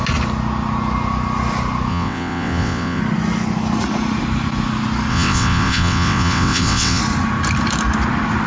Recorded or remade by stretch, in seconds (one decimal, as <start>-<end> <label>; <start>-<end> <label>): 0.0-1.9 recorded; 1.9-3.0 remade; 3.0-5.1 recorded; 5.1-7.0 remade; 7.0-8.5 recorded